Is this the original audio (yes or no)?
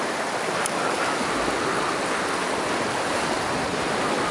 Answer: yes